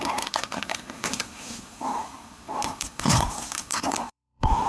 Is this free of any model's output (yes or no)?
no